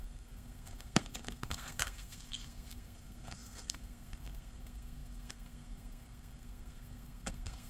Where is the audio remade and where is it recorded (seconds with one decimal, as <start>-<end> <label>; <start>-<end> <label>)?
0.0-7.7 remade